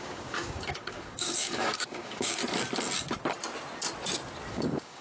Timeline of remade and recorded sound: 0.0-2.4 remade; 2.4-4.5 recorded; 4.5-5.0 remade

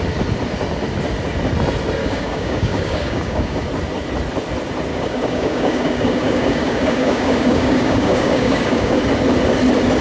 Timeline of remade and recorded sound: 0.0-2.0 recorded; 2.0-3.7 remade; 3.7-4.9 recorded; 4.9-9.0 remade; 9.0-10.0 recorded